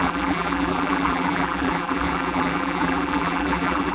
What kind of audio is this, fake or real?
fake